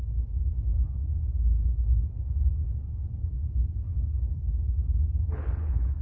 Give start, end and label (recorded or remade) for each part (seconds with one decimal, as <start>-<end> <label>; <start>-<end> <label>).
0.0-6.0 remade